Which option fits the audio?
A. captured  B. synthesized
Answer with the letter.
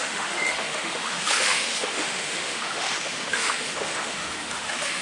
B